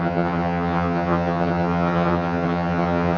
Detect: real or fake fake